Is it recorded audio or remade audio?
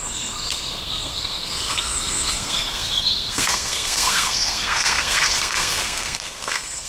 remade